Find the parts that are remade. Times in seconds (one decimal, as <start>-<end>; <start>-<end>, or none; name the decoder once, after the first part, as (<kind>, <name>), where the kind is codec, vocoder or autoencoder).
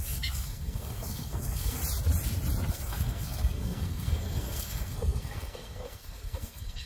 0.0-1.8 (codec, SNAC); 2.7-6.9